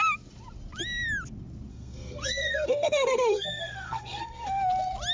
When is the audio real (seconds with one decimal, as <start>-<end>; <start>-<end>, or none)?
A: 0.0-1.7; 4.6-5.1